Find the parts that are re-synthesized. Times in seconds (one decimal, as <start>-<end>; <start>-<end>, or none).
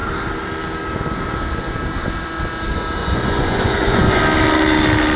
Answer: 3.0-4.2